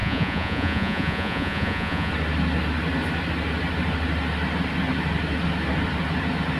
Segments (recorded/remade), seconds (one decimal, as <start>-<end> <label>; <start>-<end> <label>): 0.0-2.1 remade; 2.1-6.6 recorded